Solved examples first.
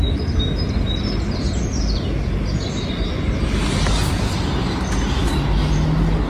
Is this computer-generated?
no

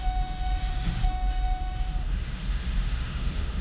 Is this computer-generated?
yes